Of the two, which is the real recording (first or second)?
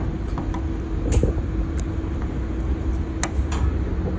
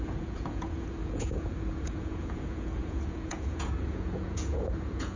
first